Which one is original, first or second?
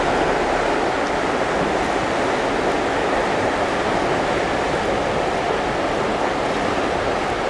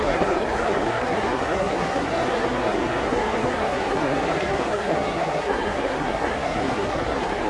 first